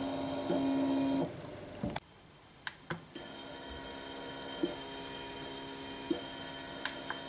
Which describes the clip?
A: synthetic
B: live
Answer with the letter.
B